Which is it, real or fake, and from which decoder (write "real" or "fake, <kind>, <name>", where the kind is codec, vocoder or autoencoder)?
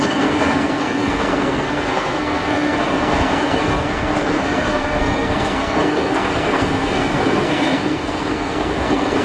fake, codec, SNAC